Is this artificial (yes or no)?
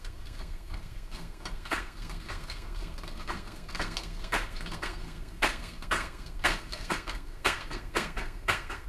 yes